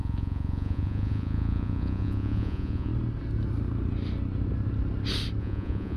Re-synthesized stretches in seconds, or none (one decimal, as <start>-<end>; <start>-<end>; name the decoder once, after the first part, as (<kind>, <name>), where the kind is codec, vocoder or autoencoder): 0.0-2.9 (vocoder, Vocos); 5.4-6.0